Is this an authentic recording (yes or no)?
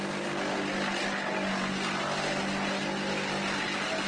yes